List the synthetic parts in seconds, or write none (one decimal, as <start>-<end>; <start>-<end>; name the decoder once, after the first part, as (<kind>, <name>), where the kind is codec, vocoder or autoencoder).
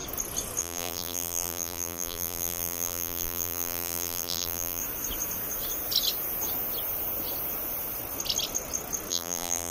0.6-4.8 (vocoder, BigVGAN v2); 9.1-9.7